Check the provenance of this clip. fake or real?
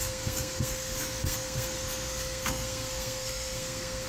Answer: fake